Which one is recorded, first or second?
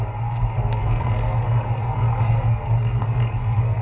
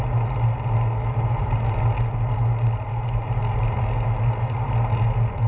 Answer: second